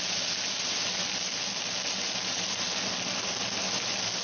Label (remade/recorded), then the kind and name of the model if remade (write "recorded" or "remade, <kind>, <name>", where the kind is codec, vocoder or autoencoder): recorded